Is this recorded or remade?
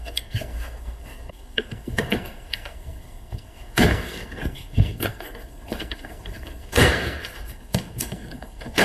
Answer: remade